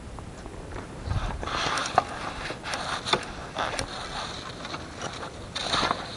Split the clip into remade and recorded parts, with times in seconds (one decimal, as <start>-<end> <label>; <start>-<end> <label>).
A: 0.0-0.5 recorded; 0.5-1.6 remade; 1.6-6.2 recorded